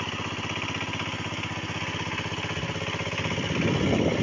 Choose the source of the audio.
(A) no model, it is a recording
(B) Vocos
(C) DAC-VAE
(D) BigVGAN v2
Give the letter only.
A